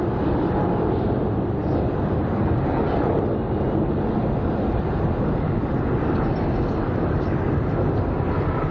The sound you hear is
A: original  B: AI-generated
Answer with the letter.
A